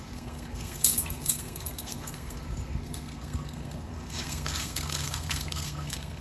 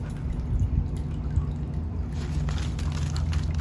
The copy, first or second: first